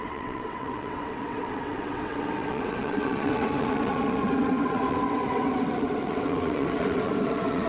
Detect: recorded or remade remade